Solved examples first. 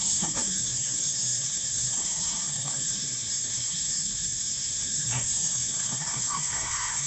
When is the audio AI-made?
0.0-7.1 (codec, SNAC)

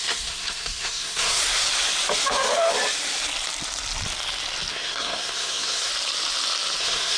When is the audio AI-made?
0.0-1.4 (codec, SNAC); 4.7-5.9; 6.8-7.2

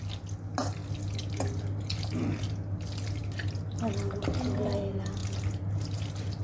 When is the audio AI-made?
none

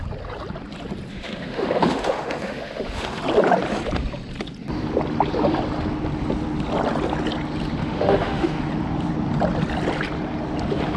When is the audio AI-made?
1.1-3.2 (autoencoder, DAC-VAE); 7.8-8.6